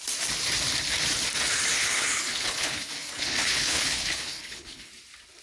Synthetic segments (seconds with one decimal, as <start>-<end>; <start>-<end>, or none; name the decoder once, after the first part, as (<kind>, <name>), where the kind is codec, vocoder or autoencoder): 1.7-4.9 (codec, HILCodec)